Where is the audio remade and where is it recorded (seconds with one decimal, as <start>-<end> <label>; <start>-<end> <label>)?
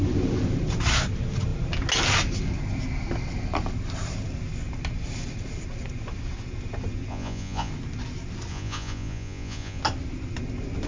0.0-7.1 recorded; 7.1-7.7 remade; 7.7-8.5 recorded; 8.5-9.8 remade; 9.8-10.9 recorded